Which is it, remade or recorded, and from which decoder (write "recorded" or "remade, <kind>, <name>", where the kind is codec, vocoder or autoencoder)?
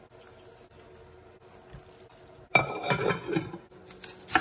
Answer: recorded